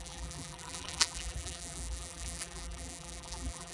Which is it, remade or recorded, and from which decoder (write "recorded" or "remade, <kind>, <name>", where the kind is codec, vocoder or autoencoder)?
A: remade, vocoder, BigVGAN v2